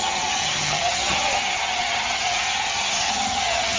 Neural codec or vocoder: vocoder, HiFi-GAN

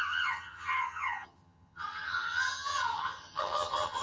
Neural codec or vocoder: vocoder, HiFi-GAN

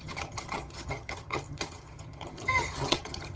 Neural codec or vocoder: vocoder, HiFi-GAN